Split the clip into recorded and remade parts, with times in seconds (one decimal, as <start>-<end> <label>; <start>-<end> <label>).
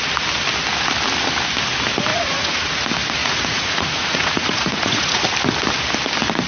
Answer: 0.0-2.1 recorded; 2.1-2.8 remade; 2.8-3.2 recorded; 3.2-5.2 remade; 5.2-6.5 recorded